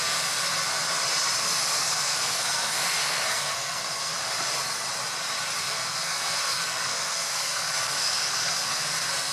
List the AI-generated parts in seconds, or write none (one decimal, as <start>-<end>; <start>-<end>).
0.0-0.5; 1.4-4.1; 5.6-9.3